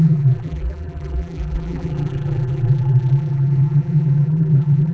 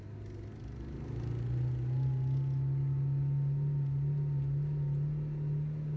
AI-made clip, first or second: first